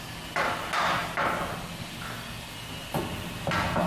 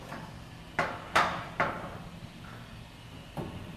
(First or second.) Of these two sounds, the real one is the first